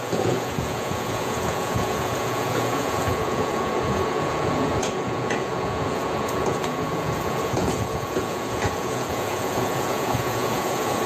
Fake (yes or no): yes